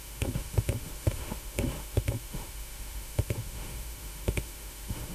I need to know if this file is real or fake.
fake